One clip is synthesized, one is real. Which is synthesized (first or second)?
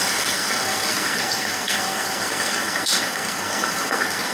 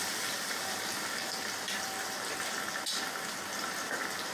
first